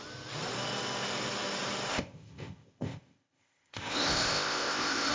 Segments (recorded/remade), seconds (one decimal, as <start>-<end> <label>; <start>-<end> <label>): 0.0-1.9 recorded; 1.9-5.1 remade